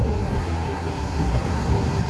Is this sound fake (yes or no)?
yes